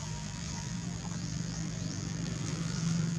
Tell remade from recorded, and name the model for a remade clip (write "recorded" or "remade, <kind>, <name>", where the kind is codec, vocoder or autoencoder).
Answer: remade, vocoder, BigVGAN v2